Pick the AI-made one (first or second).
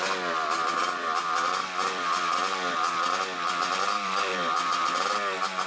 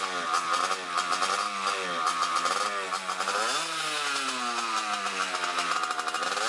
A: first